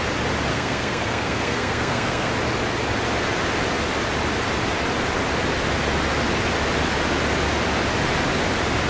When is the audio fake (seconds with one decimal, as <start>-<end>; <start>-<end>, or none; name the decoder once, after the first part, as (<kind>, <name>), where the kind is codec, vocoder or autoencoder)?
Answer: 0.5-2.3 (codec, SNAC)